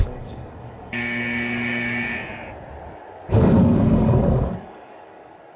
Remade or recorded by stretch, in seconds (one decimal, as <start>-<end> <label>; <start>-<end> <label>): 0.0-2.1 remade; 2.1-3.3 recorded; 3.3-5.6 remade